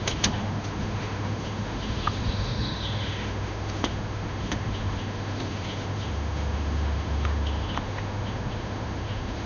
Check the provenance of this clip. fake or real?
fake